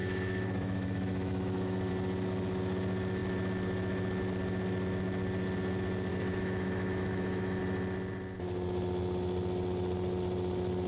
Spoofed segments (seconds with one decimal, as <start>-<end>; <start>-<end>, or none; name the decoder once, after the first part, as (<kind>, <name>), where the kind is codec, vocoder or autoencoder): 0.0-1.9 (autoencoder, DAC-VAE); 6.1-7.6